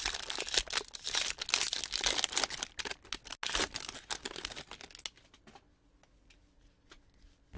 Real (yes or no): yes